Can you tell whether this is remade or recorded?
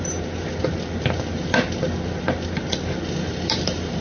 recorded